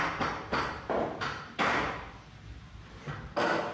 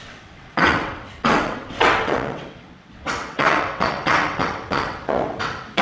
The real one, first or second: first